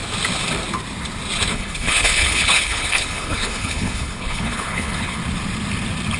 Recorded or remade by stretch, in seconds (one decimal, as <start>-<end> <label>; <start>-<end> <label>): 0.0-1.5 recorded; 1.5-5.2 remade; 5.2-6.2 recorded